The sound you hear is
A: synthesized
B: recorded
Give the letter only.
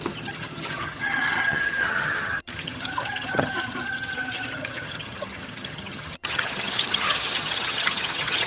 A